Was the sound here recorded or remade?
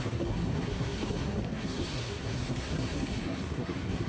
remade